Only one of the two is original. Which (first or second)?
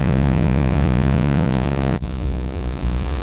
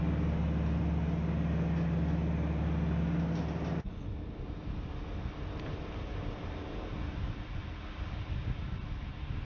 second